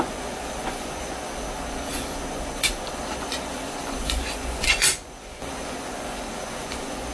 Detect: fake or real fake